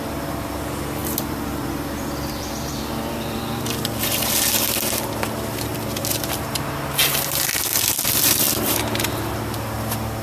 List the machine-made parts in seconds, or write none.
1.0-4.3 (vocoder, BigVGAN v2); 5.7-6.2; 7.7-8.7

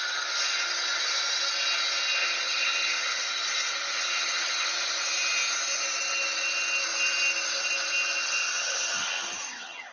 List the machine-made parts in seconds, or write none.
2.2-3.2 (vocoder, HiFi-GAN); 3.9-4.7; 8.2-9.9

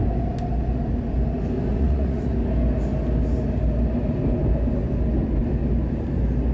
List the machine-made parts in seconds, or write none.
1.7-2.3 (vocoder, Vocos)

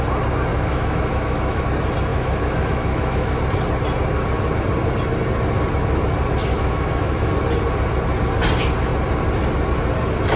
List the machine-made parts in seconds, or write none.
0.5-1.6 (autoencoder, DAC-VAE); 2.1-3.4; 6.5-7.3